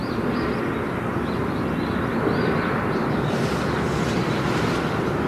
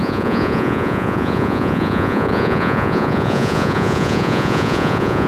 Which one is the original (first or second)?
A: first